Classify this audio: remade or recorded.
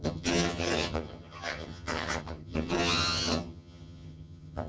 remade